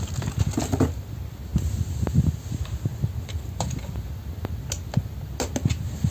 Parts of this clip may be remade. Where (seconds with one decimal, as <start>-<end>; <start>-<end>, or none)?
none